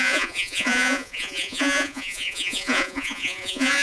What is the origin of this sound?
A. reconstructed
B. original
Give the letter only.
A